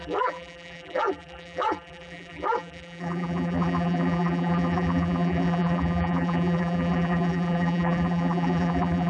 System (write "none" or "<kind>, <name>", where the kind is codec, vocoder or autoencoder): vocoder, BigVGAN v2